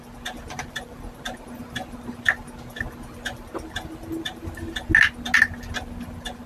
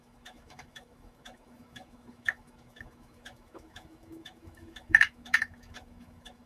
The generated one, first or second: second